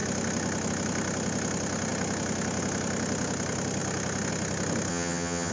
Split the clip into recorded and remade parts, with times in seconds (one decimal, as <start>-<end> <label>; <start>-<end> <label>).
0.0-4.9 recorded; 4.9-5.5 remade